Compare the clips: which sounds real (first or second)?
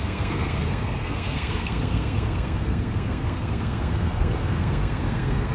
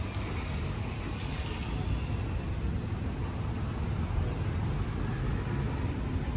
second